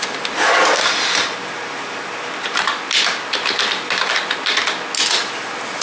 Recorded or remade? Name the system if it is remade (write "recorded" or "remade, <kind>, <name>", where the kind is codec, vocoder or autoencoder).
recorded